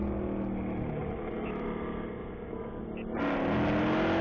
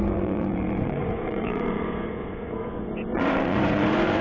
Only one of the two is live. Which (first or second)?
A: first